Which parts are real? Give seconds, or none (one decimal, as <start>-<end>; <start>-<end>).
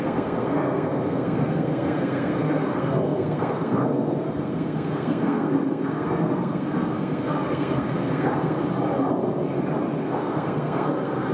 8.6-10.0